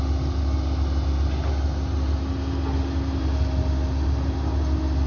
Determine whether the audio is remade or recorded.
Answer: recorded